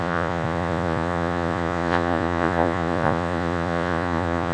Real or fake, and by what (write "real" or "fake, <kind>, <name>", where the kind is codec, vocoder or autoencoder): fake, vocoder, Vocos